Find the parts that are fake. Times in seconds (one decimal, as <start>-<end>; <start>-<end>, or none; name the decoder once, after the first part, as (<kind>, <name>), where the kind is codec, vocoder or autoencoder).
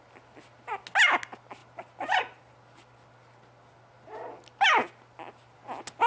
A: none